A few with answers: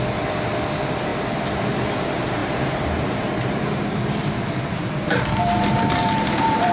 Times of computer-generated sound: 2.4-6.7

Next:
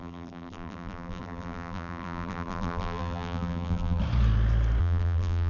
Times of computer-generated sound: 0.0-4.0; 4.8-5.5